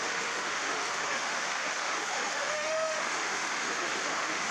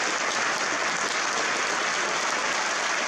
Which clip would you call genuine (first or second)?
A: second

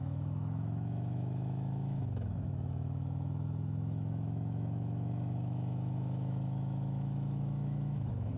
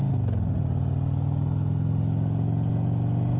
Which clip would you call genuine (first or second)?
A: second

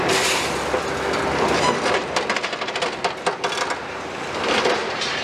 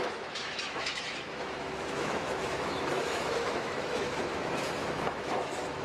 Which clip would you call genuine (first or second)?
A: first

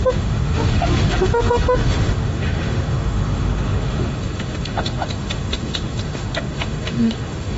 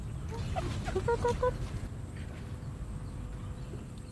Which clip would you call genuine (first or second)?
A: second